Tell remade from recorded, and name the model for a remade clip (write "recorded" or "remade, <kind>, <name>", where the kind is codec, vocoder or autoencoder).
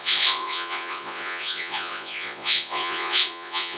remade, vocoder, Vocos